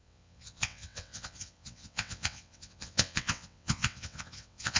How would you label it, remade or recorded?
remade